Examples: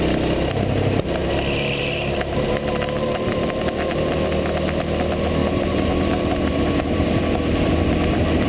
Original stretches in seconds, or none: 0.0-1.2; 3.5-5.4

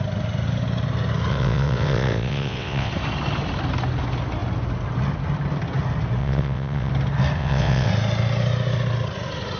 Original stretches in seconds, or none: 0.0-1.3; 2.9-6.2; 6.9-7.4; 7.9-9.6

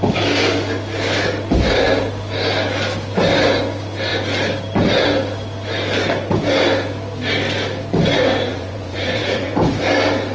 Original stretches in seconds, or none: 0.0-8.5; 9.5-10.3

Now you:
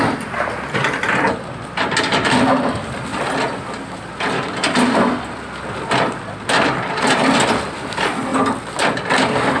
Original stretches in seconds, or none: 0.0-9.6

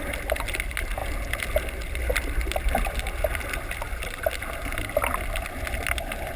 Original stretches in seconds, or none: 0.0-6.4

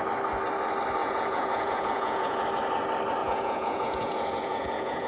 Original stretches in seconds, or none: 0.0-1.0; 2.4-3.2

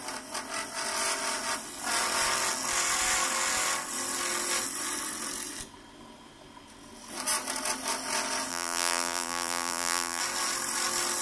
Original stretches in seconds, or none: 0.0-8.5; 10.2-11.2

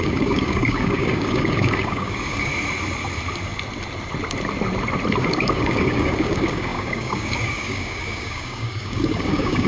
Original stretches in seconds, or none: 2.5-5.2